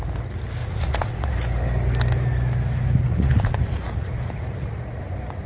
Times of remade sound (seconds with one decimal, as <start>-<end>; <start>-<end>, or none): 0.6-1.3; 3.1-5.0